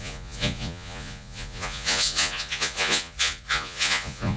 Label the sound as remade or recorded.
remade